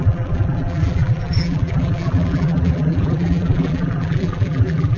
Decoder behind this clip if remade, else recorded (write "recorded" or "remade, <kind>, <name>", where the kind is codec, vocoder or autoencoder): remade, vocoder, BigVGAN v2